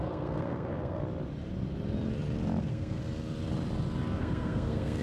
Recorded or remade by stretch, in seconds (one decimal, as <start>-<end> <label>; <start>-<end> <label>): 0.0-1.0 remade; 1.0-2.6 recorded; 2.6-3.0 remade; 3.0-4.2 recorded; 4.2-5.0 remade